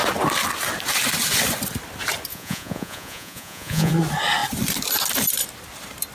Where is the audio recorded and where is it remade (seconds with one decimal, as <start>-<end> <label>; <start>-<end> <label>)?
0.0-2.3 recorded; 2.3-3.9 remade; 3.9-6.1 recorded